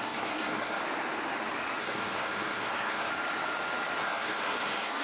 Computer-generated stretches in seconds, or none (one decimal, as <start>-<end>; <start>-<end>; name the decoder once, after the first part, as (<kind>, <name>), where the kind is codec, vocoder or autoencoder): 0.0-0.8 (codec, SNAC); 1.8-3.1; 4.0-5.0